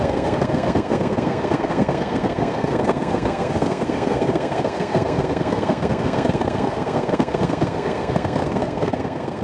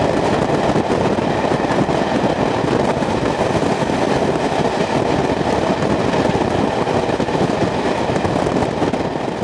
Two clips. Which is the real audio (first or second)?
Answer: second